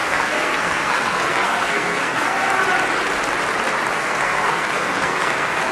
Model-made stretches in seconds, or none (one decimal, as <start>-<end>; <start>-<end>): 0.0-2.6; 3.9-5.7